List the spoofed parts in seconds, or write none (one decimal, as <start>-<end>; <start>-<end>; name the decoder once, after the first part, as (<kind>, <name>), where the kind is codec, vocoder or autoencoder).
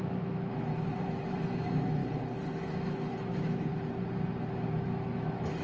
0.0-2.0 (autoencoder, DAC-VAE); 2.7-3.7; 4.5-5.6